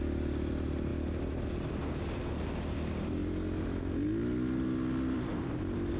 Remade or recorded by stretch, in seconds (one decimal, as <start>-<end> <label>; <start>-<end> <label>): 0.0-6.0 recorded